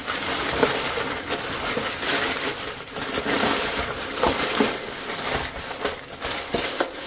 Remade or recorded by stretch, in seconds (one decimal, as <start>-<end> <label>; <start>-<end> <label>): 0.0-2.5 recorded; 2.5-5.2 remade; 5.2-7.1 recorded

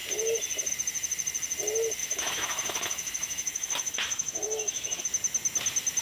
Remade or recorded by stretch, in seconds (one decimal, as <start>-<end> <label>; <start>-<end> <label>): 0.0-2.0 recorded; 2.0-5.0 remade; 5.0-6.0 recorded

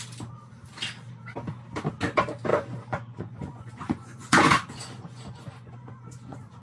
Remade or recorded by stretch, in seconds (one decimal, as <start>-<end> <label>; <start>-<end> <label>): 0.0-2.5 recorded; 2.5-6.6 remade

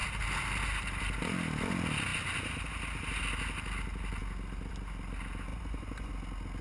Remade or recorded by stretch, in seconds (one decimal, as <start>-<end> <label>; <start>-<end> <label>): 0.0-5.5 recorded; 5.5-6.1 remade; 6.1-6.6 recorded

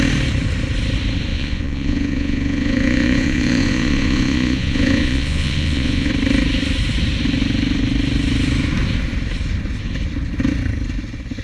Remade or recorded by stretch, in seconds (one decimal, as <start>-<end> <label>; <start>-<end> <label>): 0.0-1.3 recorded; 1.3-6.1 remade; 6.1-11.4 recorded